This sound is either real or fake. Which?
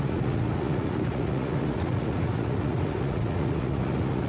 fake